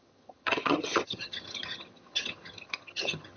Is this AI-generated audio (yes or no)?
yes